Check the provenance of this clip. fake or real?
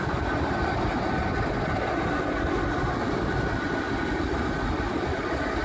real